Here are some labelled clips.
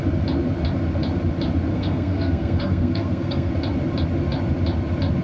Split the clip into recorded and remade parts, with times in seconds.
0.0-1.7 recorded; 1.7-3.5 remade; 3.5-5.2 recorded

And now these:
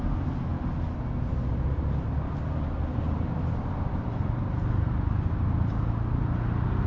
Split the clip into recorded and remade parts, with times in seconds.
0.0-6.9 recorded

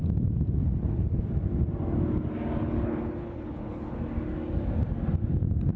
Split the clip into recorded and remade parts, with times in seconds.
0.0-0.6 recorded; 0.6-1.2 remade; 1.2-2.6 recorded; 2.6-4.0 remade; 4.0-5.8 recorded

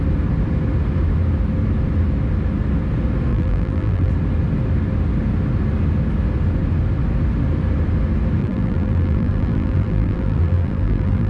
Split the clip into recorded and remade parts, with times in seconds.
0.0-3.3 recorded; 3.3-4.1 remade; 4.1-8.4 recorded; 8.4-11.3 remade

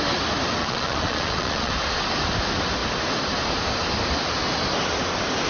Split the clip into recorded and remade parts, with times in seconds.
0.0-0.6 recorded; 0.6-1.7 remade; 1.7-5.5 recorded